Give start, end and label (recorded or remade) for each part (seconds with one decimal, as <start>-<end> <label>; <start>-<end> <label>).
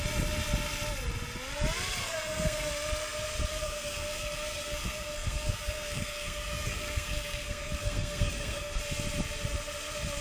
0.0-2.0 recorded; 2.0-2.7 remade; 2.7-3.5 recorded; 3.5-8.8 remade; 8.8-10.2 recorded